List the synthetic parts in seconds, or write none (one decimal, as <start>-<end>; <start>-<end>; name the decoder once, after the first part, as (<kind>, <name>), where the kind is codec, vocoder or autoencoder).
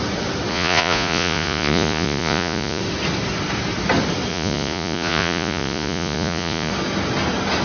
0.5-2.8 (vocoder, Vocos); 4.3-6.7